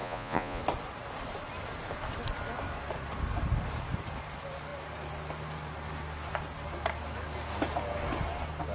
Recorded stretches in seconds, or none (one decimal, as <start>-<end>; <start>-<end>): 0.6-8.7